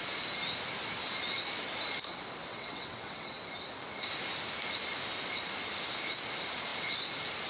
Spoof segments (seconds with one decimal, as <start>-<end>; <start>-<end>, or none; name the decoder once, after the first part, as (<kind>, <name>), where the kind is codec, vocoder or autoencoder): 2.5-3.4 (vocoder, WaveNeXt)